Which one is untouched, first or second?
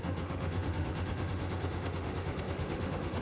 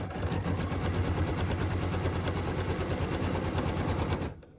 second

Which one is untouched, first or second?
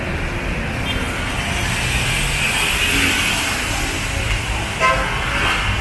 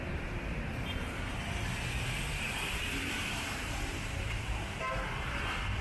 first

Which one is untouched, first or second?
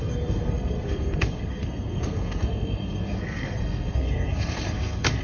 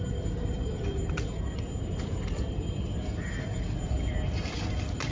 second